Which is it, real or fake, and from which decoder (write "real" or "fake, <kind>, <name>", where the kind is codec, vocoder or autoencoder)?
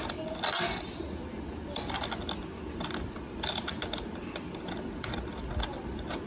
real